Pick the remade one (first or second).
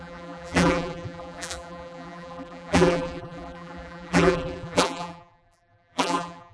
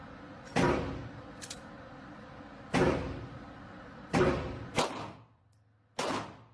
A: first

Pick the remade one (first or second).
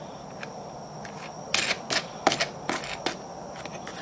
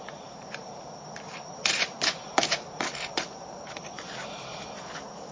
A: second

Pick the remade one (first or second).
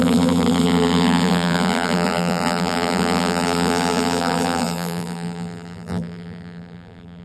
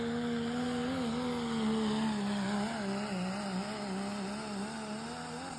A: first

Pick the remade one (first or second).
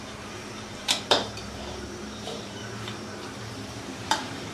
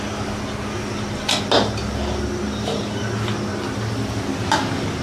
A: first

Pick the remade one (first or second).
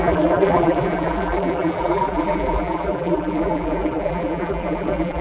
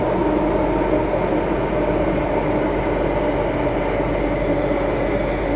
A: first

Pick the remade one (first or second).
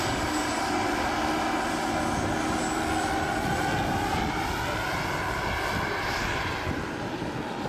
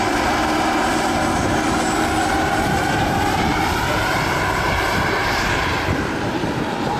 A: second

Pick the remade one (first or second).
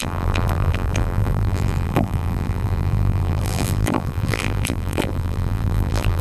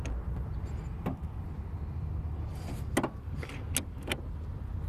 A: first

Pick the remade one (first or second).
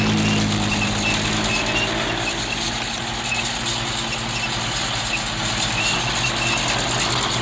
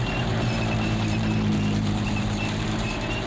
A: second